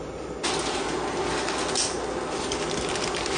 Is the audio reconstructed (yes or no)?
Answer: no